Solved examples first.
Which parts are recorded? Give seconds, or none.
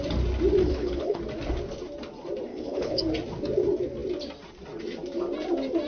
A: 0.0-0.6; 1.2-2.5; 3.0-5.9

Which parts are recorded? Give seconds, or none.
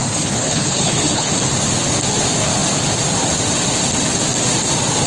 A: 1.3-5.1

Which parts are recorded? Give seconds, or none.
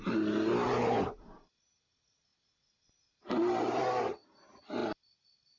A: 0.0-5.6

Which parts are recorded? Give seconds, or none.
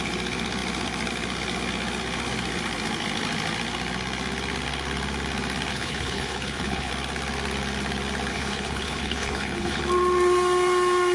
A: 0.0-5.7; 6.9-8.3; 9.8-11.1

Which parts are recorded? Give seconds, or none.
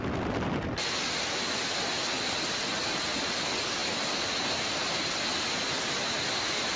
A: 0.0-6.8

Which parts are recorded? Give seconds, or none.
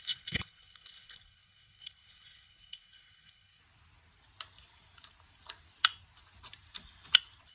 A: 3.6-7.5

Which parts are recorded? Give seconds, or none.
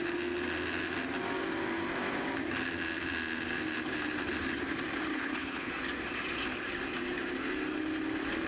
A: 0.0-5.1; 5.7-8.5